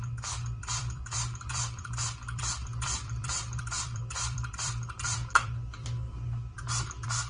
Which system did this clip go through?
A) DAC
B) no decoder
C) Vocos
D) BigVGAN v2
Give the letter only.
D